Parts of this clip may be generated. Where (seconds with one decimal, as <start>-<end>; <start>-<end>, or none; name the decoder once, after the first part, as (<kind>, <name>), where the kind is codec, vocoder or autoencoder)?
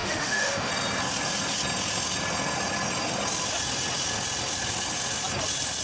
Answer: 0.0-0.7 (autoencoder, DAC-VAE)